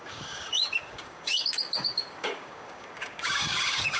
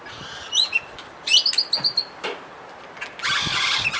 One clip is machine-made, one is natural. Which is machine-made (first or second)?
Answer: first